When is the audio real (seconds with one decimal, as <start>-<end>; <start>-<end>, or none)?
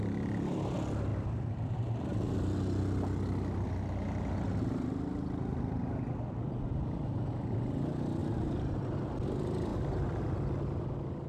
0.0-8.2; 8.8-11.3